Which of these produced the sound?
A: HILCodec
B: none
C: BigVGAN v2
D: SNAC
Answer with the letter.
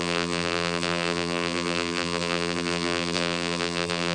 C